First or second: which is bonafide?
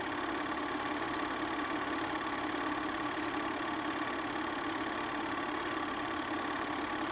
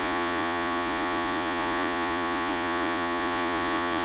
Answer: first